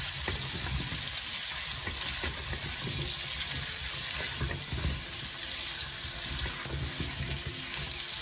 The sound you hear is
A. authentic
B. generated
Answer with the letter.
A